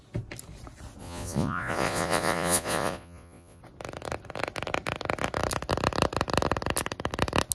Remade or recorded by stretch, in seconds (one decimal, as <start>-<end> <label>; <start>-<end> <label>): 0.0-1.0 recorded; 1.0-3.6 remade; 3.6-7.5 recorded